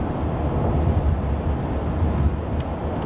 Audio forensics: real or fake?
real